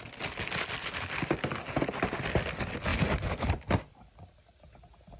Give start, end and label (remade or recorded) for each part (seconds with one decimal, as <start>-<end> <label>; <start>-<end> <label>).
0.0-2.9 recorded; 2.9-4.3 remade; 4.3-5.2 recorded